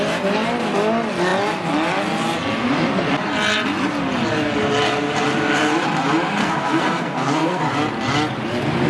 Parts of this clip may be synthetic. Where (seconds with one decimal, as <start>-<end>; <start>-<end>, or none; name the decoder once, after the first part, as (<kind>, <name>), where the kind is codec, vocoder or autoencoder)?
6.4-7.6 (codec, SNAC)